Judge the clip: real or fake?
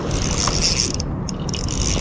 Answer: real